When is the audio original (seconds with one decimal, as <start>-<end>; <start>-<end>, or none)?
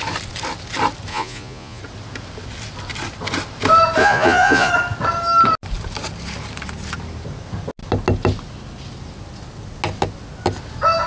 0.0-1.1; 1.8-4.0; 4.7-11.1